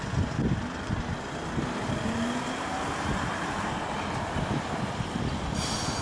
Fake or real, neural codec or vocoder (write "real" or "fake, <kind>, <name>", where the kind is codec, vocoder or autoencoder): real